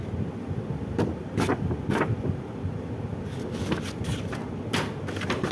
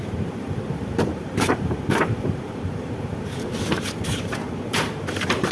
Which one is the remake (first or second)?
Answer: second